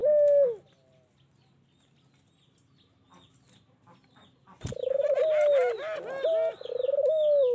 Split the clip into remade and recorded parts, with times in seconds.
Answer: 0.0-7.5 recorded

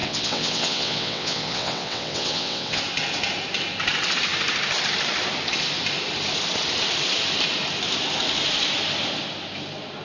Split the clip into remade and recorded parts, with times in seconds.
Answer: 0.0-2.8 remade; 2.8-10.0 recorded

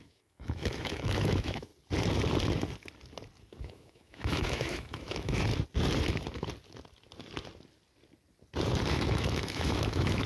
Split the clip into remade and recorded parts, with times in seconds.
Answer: 0.0-1.7 remade; 1.7-3.6 recorded; 3.6-5.5 remade; 5.5-8.9 recorded; 8.9-10.3 remade

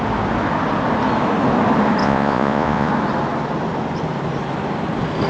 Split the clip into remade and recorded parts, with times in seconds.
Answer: 0.0-2.0 recorded; 2.0-2.9 remade; 2.9-5.3 recorded